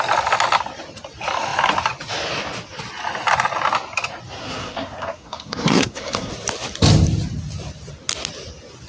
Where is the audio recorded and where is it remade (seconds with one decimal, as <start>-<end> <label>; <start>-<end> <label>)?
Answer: 0.0-4.4 recorded; 4.4-6.3 remade; 6.3-8.9 recorded